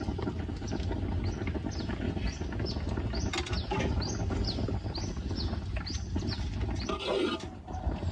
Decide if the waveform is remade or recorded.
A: recorded